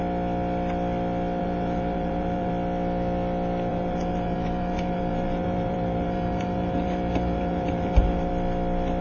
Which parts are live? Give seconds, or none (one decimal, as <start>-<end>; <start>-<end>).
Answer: 0.0-1.4; 2.5-3.7; 8.3-9.0